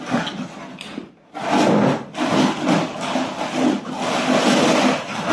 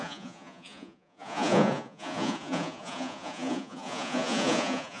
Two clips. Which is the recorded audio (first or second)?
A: first